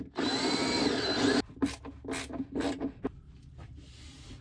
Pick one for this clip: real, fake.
real